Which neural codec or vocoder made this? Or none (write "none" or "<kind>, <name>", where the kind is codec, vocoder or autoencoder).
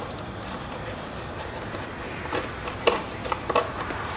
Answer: none